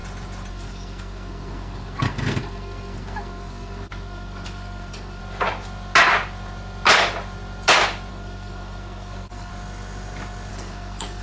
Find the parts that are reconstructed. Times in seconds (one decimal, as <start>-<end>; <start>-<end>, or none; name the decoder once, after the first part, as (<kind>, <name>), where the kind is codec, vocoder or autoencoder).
0.5-5.2 (codec, SNAC); 8.1-9.5; 10.5-11.2